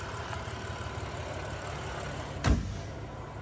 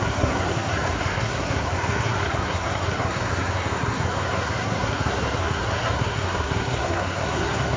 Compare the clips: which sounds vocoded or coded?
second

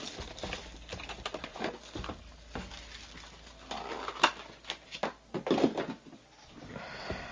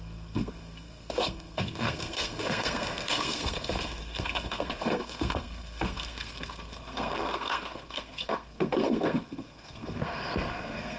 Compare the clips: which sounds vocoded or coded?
second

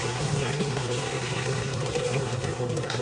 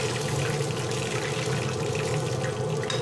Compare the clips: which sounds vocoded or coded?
first